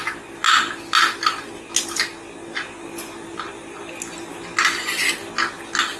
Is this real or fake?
real